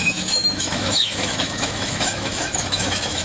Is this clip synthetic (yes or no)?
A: yes